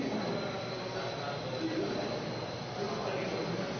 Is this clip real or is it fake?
real